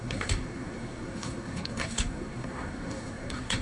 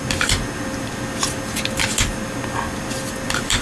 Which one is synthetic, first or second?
first